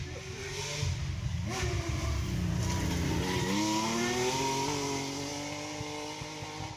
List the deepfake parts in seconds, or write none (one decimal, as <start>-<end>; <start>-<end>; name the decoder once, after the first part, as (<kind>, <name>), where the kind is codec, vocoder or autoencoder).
none